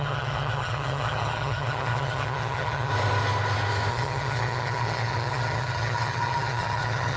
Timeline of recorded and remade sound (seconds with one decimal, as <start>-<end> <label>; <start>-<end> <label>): 0.0-2.9 remade; 2.9-3.9 recorded; 3.9-7.2 remade